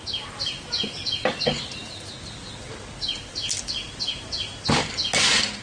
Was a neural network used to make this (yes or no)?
no